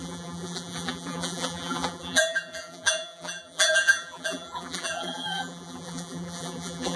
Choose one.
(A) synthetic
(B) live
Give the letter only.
A